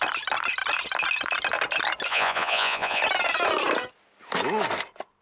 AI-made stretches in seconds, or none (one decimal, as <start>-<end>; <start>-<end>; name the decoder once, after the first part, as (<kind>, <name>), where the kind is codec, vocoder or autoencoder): 2.1-3.0 (vocoder, Vocos)